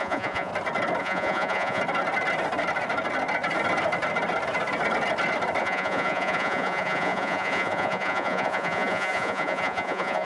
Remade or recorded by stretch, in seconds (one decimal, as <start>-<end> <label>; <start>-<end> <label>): 0.0-0.5 remade; 0.5-1.0 recorded; 1.0-1.8 remade; 1.8-5.6 recorded; 5.6-10.3 remade

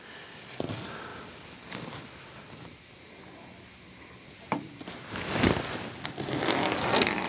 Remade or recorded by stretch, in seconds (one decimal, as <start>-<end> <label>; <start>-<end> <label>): 0.0-7.3 recorded

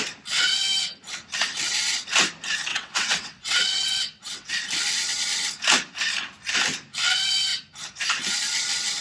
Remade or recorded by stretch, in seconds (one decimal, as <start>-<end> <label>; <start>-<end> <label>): 0.0-2.7 recorded; 2.7-4.5 remade; 4.5-9.0 recorded

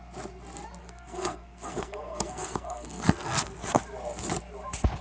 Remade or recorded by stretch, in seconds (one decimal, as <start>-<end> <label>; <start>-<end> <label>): 0.0-0.8 recorded; 0.8-3.8 remade; 3.8-5.0 recorded

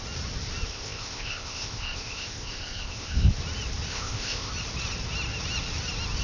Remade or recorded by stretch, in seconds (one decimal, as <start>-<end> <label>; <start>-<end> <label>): 0.0-0.7 recorded; 0.7-3.3 remade; 3.3-3.9 recorded; 3.9-4.5 remade; 4.5-6.2 recorded

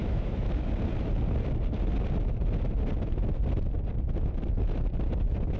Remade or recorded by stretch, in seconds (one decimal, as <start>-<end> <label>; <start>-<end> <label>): 0.0-0.7 remade; 0.7-5.6 recorded

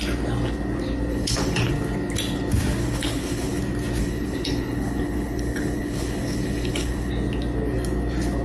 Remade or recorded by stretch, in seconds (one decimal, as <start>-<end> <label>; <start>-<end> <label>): 0.0-1.1 recorded; 1.1-1.7 remade; 1.7-2.8 recorded; 2.8-3.6 remade; 3.6-4.0 recorded; 4.0-7.1 remade; 7.1-8.4 recorded